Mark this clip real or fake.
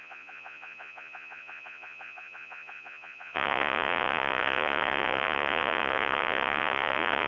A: fake